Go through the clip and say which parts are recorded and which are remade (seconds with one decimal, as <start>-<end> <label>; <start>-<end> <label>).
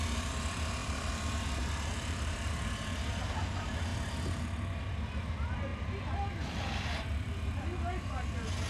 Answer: 0.0-0.8 recorded; 0.8-2.5 remade; 2.5-8.7 recorded